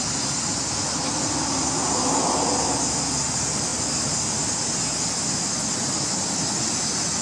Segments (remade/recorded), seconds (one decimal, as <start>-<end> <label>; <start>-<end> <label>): 0.0-7.2 recorded